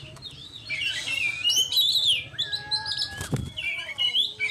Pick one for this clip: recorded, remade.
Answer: recorded